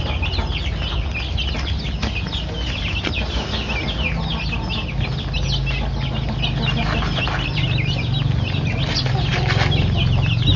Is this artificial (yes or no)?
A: no